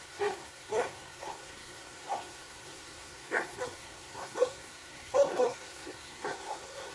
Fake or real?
fake